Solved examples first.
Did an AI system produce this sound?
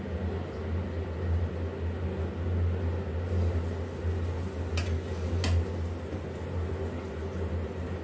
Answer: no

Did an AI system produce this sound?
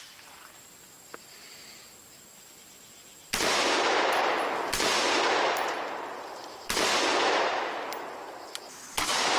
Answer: no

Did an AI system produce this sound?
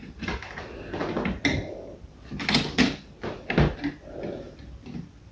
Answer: no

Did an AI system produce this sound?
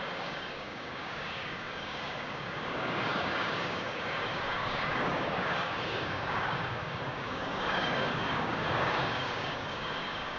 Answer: yes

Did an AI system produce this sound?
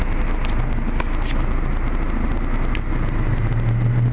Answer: no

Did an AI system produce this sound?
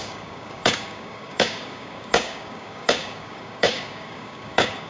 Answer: yes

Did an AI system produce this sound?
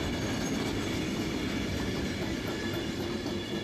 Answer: no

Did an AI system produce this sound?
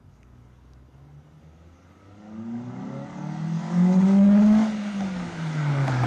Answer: yes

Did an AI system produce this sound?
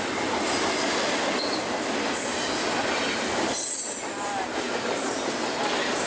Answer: no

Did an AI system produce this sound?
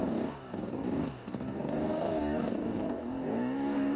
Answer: yes